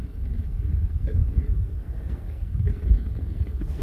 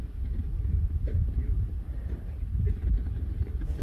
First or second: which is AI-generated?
first